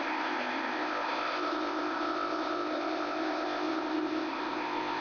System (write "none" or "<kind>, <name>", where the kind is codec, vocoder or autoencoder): codec, ZipCodec